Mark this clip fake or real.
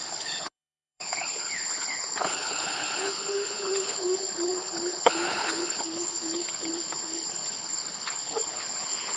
fake